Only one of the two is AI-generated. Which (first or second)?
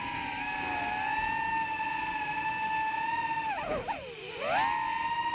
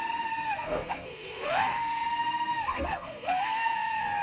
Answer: second